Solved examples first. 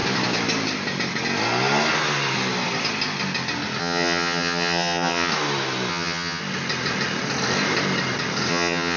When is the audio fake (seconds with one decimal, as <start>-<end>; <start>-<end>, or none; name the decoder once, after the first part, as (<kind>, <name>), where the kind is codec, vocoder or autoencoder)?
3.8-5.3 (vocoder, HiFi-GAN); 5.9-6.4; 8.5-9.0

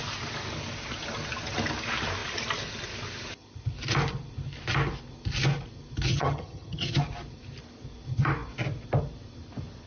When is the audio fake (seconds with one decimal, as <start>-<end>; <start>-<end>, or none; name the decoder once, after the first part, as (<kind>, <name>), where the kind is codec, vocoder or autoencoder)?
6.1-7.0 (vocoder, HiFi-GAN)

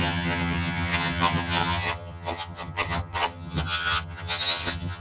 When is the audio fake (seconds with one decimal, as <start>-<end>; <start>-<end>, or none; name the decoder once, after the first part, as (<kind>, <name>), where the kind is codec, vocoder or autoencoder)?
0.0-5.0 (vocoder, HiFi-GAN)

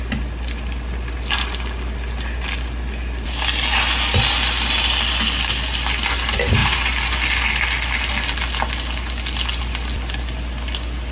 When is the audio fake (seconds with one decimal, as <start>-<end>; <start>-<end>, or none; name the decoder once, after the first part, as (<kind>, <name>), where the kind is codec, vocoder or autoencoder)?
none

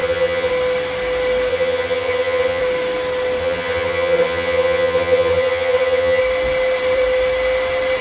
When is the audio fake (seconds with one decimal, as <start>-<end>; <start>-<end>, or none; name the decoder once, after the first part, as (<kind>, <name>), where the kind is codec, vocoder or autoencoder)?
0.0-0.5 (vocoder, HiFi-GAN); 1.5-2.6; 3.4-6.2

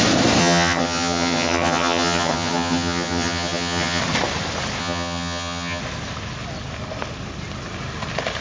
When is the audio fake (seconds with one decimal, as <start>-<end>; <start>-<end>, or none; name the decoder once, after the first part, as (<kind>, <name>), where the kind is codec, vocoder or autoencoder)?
0.4-4.0 (vocoder, HiFi-GAN); 4.8-5.8

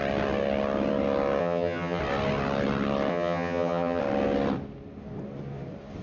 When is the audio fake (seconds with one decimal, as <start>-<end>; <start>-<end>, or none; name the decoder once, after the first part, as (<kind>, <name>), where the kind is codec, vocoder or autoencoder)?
1.4-2.0 (vocoder, HiFi-GAN); 3.1-4.0

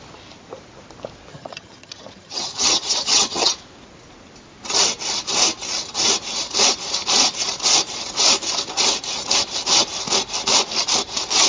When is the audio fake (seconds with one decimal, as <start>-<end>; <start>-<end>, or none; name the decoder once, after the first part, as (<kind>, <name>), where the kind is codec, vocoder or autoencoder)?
1.3-3.5 (vocoder, HiFi-GAN)